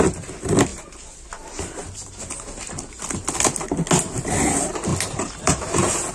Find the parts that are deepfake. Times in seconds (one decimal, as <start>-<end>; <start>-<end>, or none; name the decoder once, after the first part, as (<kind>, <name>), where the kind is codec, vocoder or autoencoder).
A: none

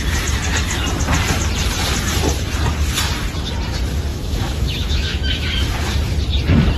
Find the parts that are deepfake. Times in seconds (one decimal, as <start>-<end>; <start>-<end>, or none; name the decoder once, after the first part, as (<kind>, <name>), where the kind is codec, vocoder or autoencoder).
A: 4.1-5.5 (autoencoder, DAC-VAE)

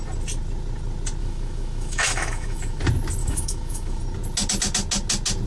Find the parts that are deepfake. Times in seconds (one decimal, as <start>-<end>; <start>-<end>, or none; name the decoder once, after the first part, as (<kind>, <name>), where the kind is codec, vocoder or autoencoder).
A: 1.2-2.8 (autoencoder, DAC-VAE); 3.2-4.0

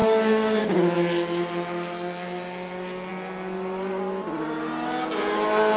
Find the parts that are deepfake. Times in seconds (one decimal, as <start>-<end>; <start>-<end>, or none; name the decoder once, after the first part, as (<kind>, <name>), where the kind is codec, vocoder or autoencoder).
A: 0.0-0.6 (autoencoder, DAC-VAE)

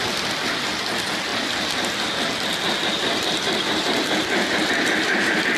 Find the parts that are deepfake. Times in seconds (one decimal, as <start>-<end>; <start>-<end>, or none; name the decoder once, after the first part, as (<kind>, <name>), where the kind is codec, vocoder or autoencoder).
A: none

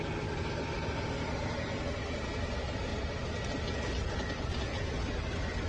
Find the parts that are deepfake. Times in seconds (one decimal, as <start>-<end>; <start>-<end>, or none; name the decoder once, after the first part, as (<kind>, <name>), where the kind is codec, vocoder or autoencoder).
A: none